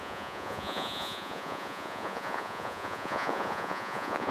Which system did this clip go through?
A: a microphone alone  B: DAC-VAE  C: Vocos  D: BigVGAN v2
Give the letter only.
C